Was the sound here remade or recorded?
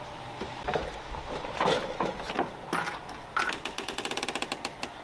recorded